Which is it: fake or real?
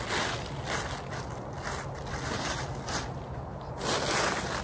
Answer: real